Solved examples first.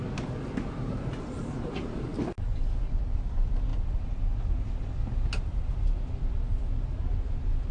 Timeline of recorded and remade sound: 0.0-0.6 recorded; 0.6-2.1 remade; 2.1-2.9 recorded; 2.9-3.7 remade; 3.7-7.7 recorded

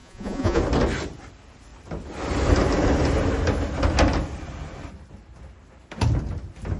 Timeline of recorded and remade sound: 0.0-0.6 remade; 0.6-6.8 recorded

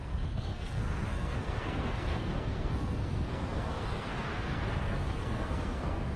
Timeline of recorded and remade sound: 0.0-6.2 remade

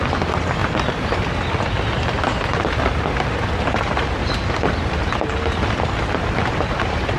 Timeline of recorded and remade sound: 0.0-7.2 recorded

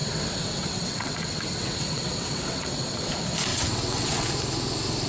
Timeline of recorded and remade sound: 0.0-3.1 remade; 3.1-3.5 recorded; 3.5-4.3 remade; 4.3-5.1 recorded